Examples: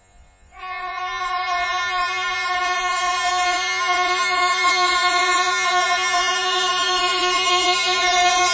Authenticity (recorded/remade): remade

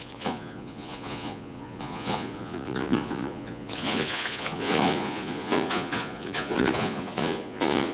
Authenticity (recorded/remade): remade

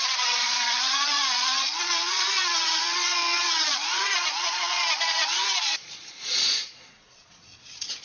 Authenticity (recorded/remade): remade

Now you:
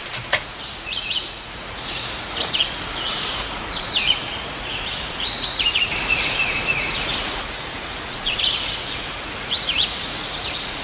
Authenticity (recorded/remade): remade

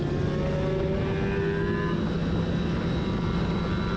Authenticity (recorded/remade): recorded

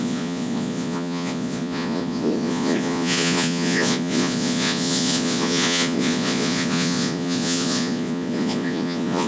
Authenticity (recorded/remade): remade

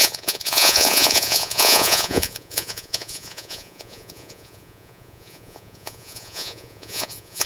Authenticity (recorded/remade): remade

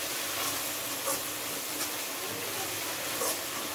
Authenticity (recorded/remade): recorded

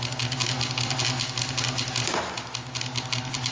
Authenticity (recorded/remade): recorded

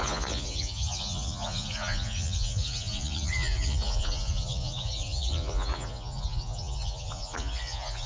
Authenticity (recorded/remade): remade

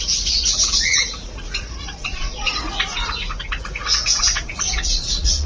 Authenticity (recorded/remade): remade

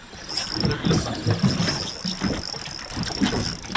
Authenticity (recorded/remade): recorded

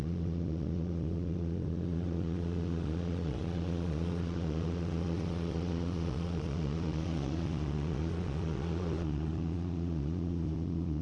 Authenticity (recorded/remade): remade